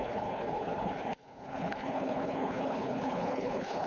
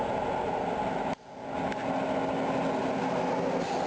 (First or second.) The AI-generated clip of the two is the first